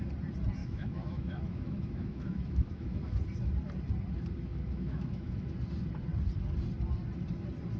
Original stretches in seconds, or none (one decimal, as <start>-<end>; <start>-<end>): 0.0-0.6; 3.1-4.5; 5.5-7.8